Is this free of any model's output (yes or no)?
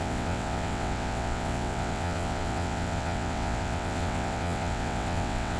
no